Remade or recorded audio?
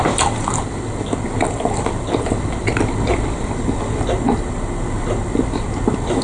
recorded